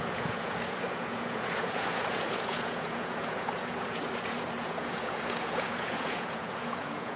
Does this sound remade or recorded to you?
remade